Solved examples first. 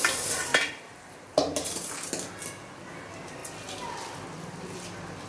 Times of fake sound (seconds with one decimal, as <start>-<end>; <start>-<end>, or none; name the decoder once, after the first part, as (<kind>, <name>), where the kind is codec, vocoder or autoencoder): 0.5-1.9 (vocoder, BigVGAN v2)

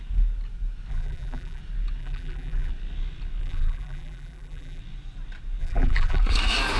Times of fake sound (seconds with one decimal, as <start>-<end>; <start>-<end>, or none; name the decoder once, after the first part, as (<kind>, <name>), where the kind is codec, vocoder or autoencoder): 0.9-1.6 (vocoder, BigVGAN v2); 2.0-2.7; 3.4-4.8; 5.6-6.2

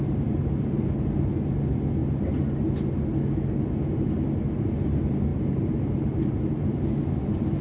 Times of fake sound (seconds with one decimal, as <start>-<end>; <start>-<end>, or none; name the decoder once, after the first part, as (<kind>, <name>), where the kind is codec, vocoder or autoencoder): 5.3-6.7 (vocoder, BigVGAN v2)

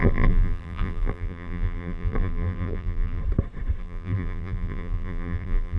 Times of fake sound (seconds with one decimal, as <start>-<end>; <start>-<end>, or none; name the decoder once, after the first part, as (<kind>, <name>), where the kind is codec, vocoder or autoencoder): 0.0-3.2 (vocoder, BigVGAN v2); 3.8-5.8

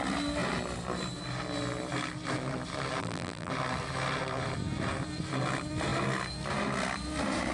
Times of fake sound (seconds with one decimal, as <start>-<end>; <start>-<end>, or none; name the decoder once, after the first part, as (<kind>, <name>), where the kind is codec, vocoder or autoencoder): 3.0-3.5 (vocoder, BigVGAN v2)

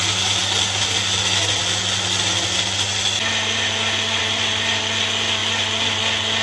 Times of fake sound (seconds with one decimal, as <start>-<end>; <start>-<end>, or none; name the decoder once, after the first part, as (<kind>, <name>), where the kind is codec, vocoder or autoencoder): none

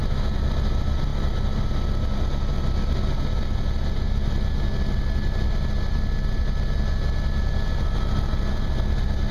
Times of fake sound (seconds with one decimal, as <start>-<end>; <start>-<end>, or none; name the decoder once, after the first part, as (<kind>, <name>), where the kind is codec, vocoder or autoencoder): none